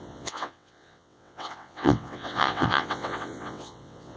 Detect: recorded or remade remade